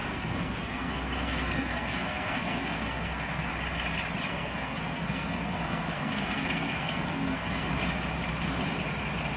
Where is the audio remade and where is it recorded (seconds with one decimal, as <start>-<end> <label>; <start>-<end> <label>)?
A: 0.0-3.5 remade; 3.5-4.3 recorded; 4.3-7.7 remade; 7.7-9.4 recorded